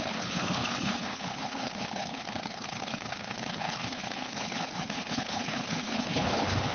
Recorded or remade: remade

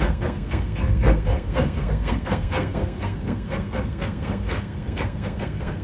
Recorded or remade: remade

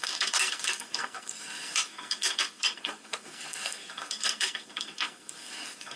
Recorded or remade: remade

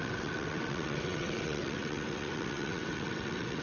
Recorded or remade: remade